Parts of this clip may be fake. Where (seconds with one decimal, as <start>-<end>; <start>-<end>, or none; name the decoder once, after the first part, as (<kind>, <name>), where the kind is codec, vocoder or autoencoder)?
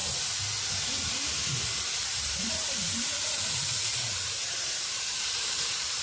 2.1-6.0 (vocoder, BigVGAN v2)